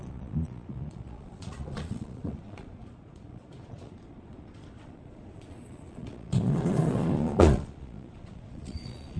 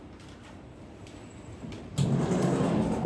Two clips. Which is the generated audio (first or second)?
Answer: first